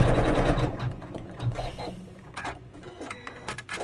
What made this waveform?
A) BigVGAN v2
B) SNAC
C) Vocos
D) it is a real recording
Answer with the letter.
C